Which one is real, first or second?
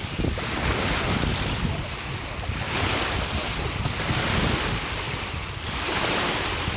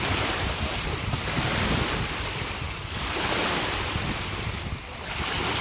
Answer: first